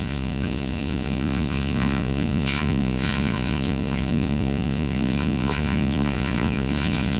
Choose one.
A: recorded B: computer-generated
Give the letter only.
B